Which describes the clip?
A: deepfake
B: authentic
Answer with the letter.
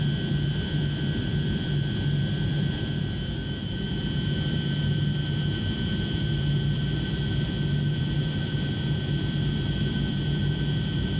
A